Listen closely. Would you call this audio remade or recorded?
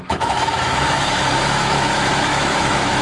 remade